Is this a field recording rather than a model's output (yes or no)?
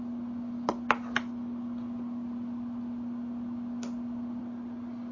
yes